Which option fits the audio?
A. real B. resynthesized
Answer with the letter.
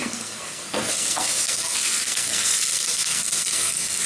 B